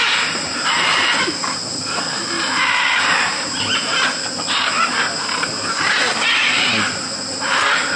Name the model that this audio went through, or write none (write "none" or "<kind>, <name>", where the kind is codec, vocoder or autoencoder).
none